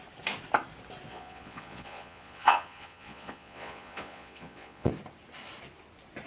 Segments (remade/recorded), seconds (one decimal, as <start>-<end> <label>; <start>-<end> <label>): 0.0-1.1 recorded; 1.1-4.9 remade; 4.9-6.3 recorded